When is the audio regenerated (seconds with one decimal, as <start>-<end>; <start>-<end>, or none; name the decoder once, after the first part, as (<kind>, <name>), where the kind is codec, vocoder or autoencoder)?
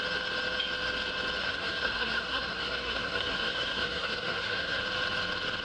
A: 1.4-4.8 (codec, SNAC)